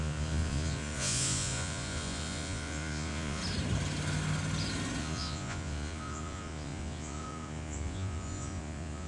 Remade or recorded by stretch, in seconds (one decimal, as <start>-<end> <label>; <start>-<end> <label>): 0.0-3.4 remade; 3.4-5.0 recorded; 5.0-9.1 remade